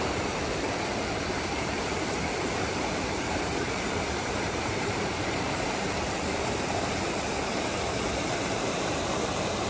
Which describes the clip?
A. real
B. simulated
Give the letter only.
B